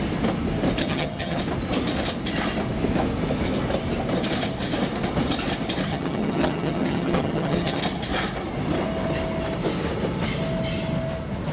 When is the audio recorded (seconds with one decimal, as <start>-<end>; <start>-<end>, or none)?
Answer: 0.0-0.8; 1.4-5.9; 7.8-11.5